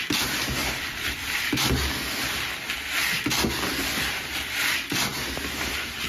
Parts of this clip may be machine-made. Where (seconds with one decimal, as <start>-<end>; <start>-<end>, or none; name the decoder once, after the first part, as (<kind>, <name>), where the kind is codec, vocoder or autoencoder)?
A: 0.6-1.5 (vocoder, BigVGAN v2)